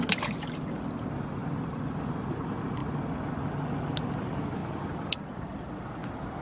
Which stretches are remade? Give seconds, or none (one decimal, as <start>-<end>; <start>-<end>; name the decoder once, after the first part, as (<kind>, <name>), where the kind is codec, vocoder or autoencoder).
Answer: 1.4-2.1 (vocoder, BigVGAN v2); 4.6-6.4